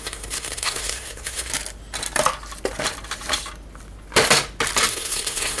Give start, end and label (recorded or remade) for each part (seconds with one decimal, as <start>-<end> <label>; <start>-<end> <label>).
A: 0.0-1.5 remade; 1.5-4.9 recorded; 4.9-5.6 remade

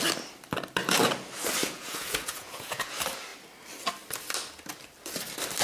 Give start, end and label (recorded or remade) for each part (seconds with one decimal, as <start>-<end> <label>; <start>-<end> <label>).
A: 0.0-1.6 recorded; 1.6-2.9 remade; 2.9-5.6 recorded

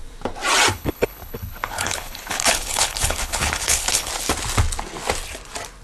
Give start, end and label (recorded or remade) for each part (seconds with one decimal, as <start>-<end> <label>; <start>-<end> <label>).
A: 0.0-0.7 recorded; 0.7-4.1 remade; 4.1-5.8 recorded

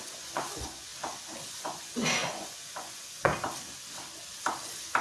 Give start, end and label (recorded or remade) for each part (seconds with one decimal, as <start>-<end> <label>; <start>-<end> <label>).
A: 0.0-0.9 remade; 0.9-1.5 recorded; 1.5-3.3 remade; 3.3-5.0 recorded

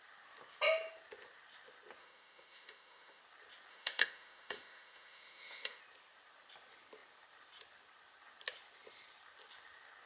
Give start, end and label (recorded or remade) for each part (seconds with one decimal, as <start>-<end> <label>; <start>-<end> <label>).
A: 0.0-2.0 recorded; 2.0-3.2 remade; 3.2-3.7 recorded; 3.7-5.8 remade; 5.8-10.1 recorded

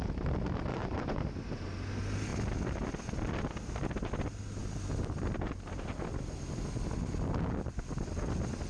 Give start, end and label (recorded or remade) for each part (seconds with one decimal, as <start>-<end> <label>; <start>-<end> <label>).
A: 0.0-0.7 recorded; 0.7-1.2 remade; 1.2-8.7 recorded